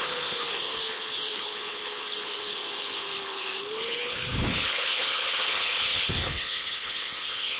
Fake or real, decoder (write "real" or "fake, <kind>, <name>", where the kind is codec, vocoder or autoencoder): fake, codec, HILCodec